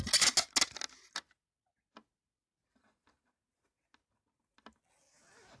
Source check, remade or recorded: recorded